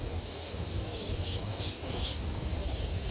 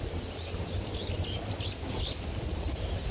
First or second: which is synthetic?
first